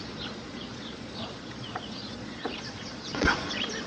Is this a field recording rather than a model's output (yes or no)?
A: no